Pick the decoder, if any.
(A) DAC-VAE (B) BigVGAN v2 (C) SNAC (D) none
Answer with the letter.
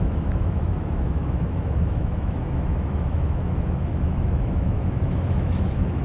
A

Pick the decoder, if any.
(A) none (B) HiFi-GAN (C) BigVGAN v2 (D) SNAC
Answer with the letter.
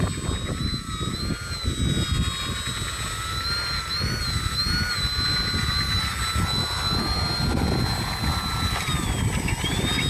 A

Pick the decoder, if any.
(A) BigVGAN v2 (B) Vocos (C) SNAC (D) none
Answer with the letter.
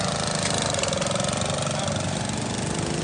D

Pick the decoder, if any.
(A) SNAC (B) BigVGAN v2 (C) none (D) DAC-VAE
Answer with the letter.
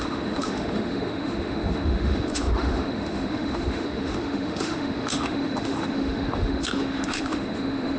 D